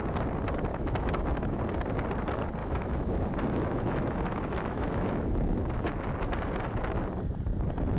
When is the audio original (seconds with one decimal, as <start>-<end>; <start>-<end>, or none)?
0.0-0.7; 1.6-2.6; 5.7-8.0